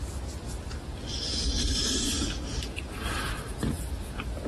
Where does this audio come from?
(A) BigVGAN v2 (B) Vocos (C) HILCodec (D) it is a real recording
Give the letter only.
D